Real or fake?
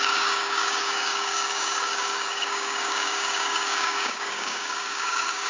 fake